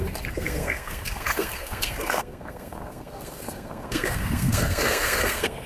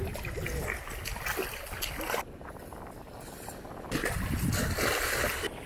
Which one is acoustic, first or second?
second